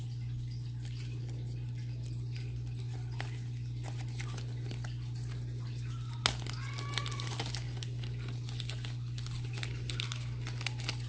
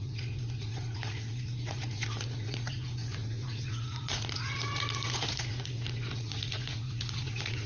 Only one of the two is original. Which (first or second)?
first